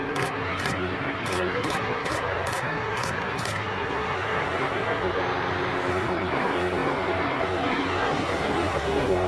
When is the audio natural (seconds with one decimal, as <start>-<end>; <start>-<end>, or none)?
5.2-5.9